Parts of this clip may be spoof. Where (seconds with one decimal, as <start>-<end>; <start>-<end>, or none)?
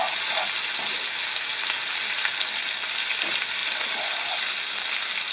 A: none